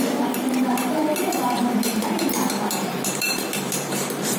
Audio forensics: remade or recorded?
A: remade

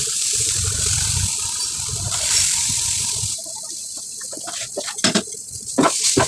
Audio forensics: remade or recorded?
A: remade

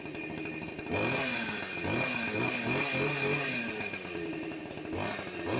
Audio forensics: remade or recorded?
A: recorded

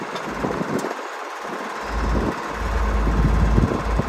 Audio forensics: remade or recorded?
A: recorded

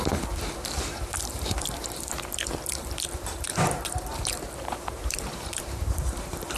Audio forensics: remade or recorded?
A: remade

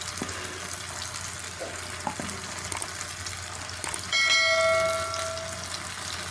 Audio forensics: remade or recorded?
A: recorded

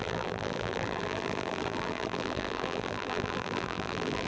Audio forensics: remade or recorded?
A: remade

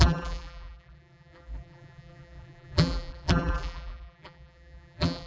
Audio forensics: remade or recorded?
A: remade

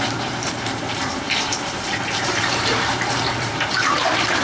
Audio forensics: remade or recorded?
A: remade